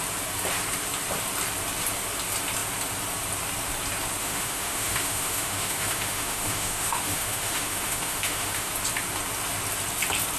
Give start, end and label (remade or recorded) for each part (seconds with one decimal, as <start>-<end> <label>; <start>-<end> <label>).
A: 0.0-4.2 recorded; 4.2-8.7 remade; 8.7-10.4 recorded